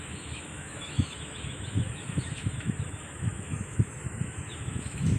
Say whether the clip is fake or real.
fake